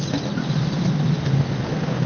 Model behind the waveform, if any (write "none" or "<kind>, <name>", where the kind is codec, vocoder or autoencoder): none